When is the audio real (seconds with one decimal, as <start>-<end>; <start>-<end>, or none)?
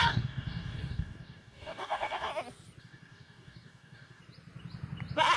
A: 2.3-2.8; 4.2-5.4